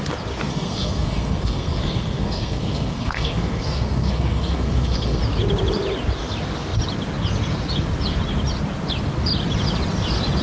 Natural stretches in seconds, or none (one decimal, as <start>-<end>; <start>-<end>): 0.0-0.5; 5.2-10.4